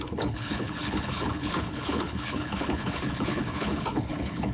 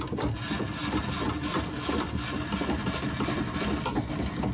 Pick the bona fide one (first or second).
second